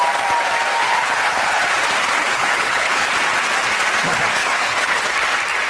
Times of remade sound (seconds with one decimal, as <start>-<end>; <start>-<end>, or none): 0.8-1.6; 2.3-3.1; 4.4-5.0

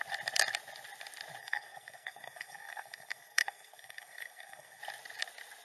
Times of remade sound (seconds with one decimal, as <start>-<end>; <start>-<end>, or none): 1.4-4.8

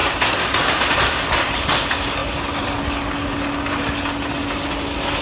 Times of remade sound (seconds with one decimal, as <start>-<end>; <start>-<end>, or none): none

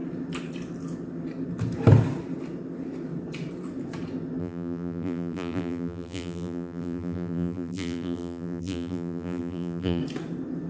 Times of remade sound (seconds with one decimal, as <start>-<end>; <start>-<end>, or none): 4.4-10.0

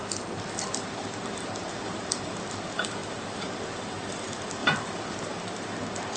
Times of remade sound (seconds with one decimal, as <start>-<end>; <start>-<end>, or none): 0.7-6.2